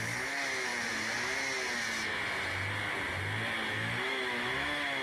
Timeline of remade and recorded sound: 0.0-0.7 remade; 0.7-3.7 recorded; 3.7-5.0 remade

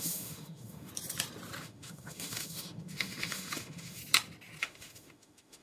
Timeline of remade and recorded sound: 0.0-0.9 remade; 0.9-1.6 recorded; 1.6-4.0 remade; 4.0-4.6 recorded; 4.6-5.6 remade

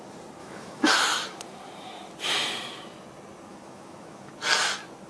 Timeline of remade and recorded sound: 0.0-0.4 recorded; 0.4-0.9 remade; 0.9-3.5 recorded; 3.5-4.3 remade; 4.3-5.1 recorded

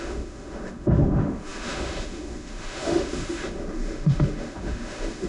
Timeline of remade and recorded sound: 0.0-5.3 remade

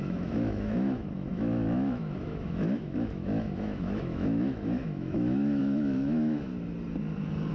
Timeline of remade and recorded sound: 0.0-6.5 remade; 6.5-7.5 recorded